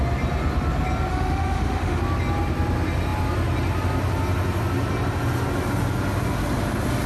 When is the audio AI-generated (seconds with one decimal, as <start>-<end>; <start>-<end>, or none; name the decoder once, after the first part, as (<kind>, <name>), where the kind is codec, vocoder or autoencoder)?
1.1-2.0 (autoencoder, DAC-VAE)